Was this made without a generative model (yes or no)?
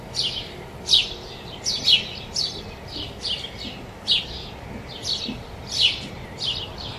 yes